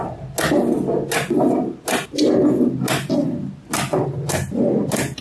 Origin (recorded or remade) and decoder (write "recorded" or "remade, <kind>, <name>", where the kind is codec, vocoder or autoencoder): recorded